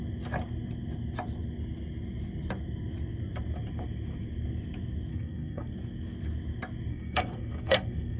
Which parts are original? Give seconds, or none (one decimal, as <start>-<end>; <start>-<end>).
0.0-5.1; 5.7-6.9